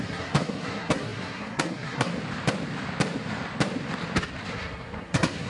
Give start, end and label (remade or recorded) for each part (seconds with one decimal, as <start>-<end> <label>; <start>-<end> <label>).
0.0-2.1 remade; 2.1-4.5 recorded; 4.5-5.5 remade